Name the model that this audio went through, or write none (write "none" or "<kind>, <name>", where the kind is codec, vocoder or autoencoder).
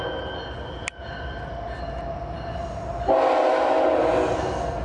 none